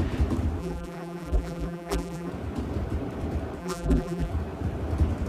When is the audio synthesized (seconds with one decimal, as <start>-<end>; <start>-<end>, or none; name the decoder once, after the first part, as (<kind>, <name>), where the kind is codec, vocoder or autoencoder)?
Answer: 0.6-2.3 (vocoder, BigVGAN v2); 3.6-4.3